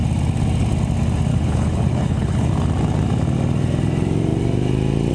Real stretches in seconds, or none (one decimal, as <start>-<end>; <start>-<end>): 0.0-1.3; 2.5-5.1